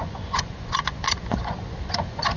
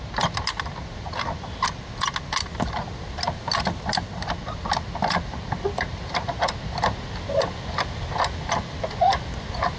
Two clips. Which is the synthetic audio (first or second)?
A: first